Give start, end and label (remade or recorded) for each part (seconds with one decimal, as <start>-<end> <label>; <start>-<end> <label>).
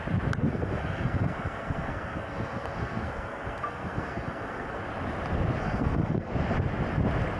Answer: 0.0-0.4 recorded; 0.4-4.8 remade; 4.8-5.6 recorded; 5.6-6.3 remade; 6.3-7.4 recorded